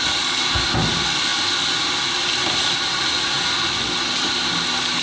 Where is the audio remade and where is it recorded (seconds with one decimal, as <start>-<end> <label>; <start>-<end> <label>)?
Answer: 0.0-5.0 recorded